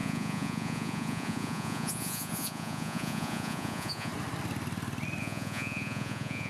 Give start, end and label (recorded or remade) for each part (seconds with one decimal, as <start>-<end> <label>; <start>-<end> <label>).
0.0-4.1 remade; 4.1-5.2 recorded; 5.2-6.5 remade